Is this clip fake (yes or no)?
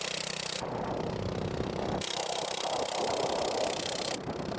no